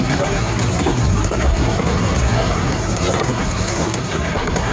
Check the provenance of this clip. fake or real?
fake